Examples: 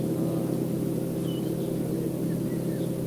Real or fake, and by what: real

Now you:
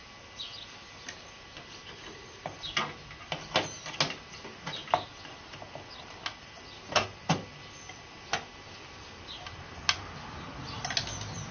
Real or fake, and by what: real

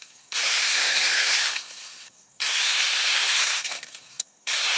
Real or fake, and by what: fake, codec, SNAC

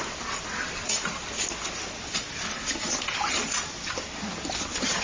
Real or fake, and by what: real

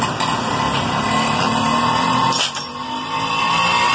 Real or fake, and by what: real